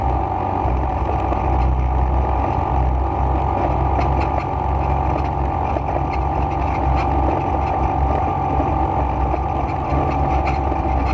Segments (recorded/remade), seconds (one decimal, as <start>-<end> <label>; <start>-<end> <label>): 0.0-11.1 recorded